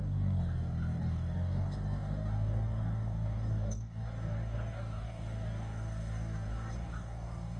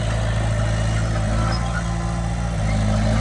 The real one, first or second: second